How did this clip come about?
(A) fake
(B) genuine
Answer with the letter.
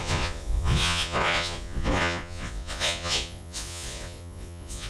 A